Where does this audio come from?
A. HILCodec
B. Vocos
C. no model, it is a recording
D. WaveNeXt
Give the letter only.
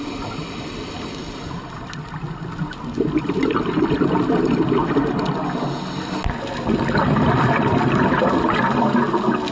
C